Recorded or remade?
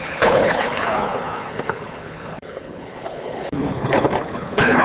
remade